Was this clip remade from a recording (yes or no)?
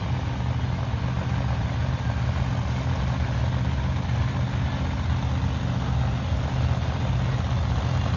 no